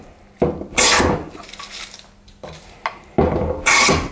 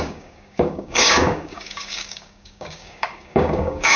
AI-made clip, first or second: second